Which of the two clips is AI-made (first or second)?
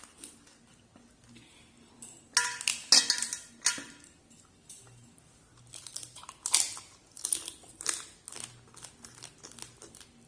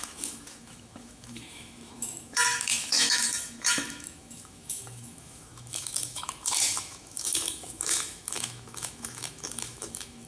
second